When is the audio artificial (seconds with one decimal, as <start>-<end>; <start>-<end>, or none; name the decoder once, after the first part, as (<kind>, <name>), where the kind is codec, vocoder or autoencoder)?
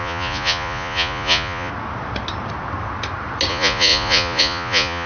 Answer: 0.0-1.7 (vocoder, Vocos); 3.5-5.1